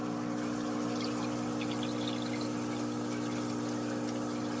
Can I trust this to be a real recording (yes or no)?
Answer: yes